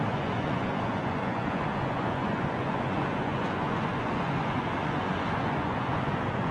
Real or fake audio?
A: fake